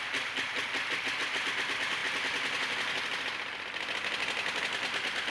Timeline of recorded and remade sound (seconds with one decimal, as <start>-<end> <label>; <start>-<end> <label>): 0.0-5.3 recorded